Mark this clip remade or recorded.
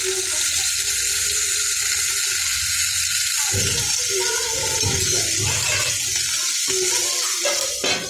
recorded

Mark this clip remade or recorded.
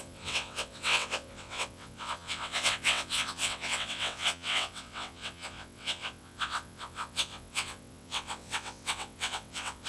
remade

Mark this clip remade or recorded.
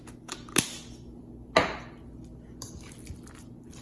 recorded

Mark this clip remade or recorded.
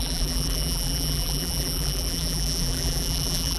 remade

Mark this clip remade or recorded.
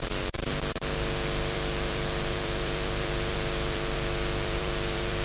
remade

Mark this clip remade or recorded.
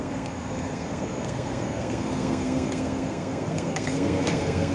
remade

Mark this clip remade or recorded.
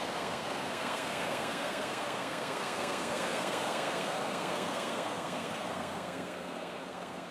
remade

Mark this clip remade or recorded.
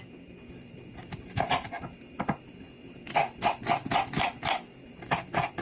recorded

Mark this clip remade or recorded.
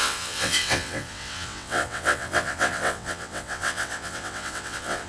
remade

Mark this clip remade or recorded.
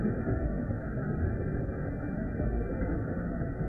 remade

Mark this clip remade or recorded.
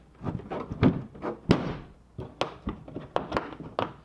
recorded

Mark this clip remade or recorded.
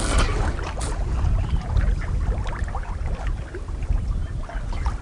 recorded